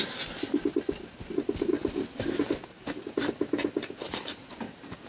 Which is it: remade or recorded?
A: recorded